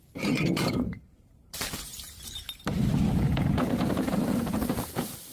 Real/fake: fake